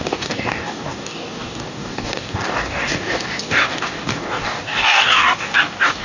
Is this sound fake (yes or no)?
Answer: yes